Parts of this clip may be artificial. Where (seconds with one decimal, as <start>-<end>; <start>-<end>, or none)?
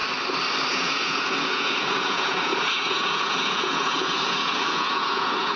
0.7-5.6